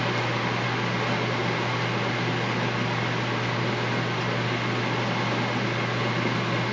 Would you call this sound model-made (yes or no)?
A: no